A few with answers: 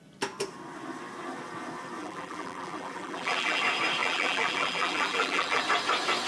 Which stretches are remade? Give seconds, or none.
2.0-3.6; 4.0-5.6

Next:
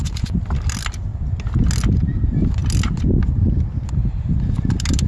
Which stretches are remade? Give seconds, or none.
none

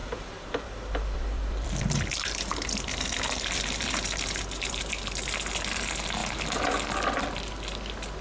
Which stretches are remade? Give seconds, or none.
0.0-4.9

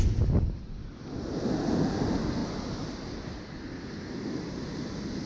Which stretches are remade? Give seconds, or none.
none